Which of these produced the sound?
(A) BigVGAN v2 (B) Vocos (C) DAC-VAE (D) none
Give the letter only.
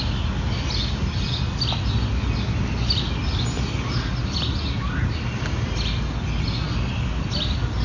D